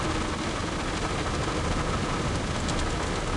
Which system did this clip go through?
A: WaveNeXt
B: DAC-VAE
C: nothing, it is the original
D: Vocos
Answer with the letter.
C